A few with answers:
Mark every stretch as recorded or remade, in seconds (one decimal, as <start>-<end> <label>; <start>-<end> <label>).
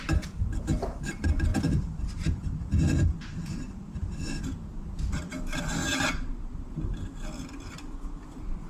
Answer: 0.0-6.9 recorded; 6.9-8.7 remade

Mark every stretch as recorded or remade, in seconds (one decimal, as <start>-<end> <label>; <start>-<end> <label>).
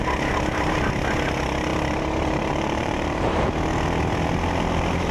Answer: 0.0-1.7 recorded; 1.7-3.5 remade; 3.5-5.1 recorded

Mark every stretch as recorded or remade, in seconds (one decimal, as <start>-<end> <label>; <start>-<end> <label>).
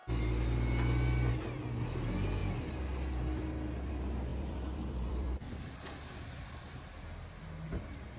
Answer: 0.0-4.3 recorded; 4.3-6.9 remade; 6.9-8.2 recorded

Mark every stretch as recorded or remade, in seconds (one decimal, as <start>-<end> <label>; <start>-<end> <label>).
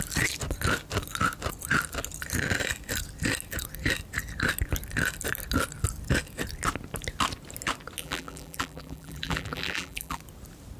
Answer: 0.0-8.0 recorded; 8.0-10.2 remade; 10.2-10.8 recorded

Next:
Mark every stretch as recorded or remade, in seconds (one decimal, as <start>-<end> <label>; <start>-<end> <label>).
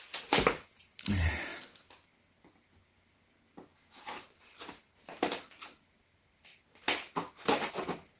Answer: 0.0-1.5 remade; 1.5-4.4 recorded; 4.4-6.5 remade; 6.5-7.7 recorded; 7.7-8.2 remade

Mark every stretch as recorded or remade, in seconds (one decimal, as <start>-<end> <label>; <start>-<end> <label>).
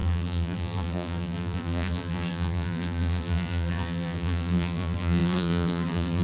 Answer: 0.0-6.2 remade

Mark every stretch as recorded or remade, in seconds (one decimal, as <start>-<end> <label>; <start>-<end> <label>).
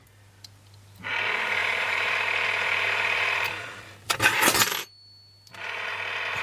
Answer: 0.0-1.6 recorded; 1.6-4.6 remade; 4.6-6.4 recorded